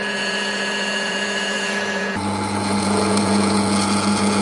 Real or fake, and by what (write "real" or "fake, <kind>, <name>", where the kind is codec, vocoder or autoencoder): fake, vocoder, Vocos